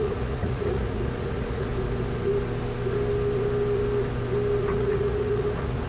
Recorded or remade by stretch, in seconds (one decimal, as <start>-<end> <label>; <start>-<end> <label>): 0.0-1.7 remade; 1.7-4.7 recorded; 4.7-5.9 remade